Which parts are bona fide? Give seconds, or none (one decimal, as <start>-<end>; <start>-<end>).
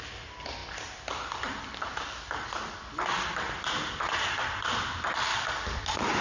0.0-5.3; 5.8-6.2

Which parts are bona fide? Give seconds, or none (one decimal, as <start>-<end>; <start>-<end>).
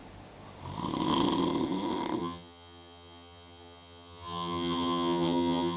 0.0-2.2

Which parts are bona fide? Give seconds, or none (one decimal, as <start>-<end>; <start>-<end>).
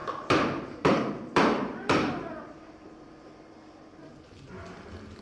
none